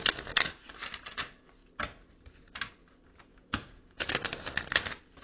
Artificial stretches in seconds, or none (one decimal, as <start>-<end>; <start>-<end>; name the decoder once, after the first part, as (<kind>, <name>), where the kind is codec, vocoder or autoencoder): 3.3-4.1 (vocoder, Vocos)